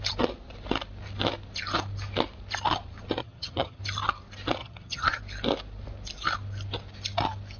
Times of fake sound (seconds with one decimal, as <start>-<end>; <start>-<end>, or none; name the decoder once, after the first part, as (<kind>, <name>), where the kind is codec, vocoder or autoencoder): 3.2-3.8 (vocoder, HiFi-GAN); 4.6-5.2